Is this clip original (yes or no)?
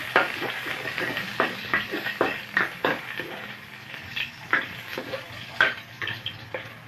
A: no